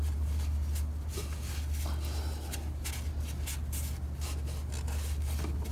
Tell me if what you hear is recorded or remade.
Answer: recorded